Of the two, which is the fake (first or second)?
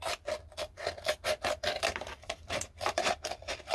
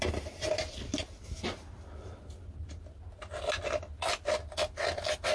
first